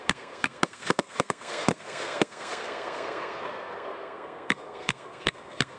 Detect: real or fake fake